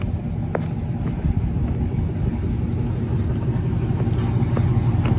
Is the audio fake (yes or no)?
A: no